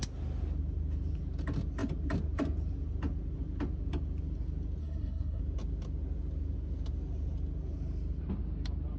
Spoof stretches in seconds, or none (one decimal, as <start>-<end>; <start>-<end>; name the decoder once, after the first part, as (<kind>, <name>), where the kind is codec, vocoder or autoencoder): 4.8-5.4 (codec, SNAC)